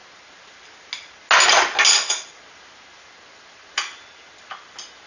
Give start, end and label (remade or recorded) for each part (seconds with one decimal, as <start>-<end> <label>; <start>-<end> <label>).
0.0-5.1 recorded